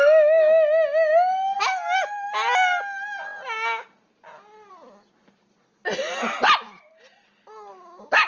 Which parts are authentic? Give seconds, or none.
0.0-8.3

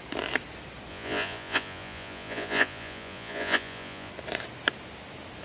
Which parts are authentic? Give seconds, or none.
0.0-0.9; 4.1-5.4